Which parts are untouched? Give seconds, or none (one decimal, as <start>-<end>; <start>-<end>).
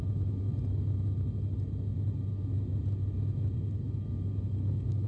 0.5-3.6